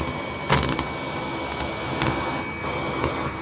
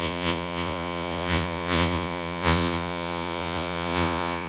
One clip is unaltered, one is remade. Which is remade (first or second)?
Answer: second